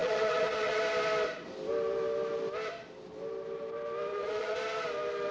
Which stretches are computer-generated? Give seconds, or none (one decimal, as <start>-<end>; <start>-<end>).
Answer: 0.0-0.8; 4.1-4.6